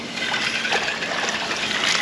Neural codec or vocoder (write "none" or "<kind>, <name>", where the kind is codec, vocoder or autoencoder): none